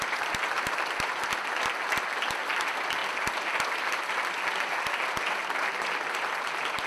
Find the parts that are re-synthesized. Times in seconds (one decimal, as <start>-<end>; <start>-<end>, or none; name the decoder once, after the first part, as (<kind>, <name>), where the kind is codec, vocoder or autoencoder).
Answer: 3.0-5.1 (vocoder, BigVGAN v2)